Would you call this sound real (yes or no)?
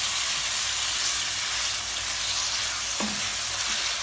yes